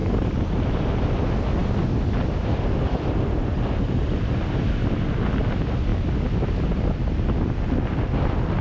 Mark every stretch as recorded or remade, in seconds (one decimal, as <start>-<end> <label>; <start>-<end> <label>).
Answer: 0.0-8.6 recorded